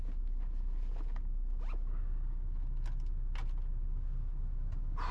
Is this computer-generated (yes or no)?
no